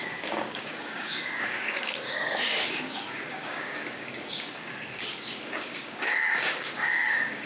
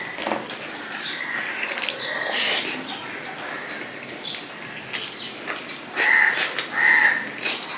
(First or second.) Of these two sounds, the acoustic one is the second